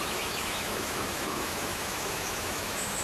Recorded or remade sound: remade